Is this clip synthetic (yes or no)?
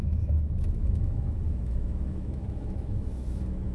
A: yes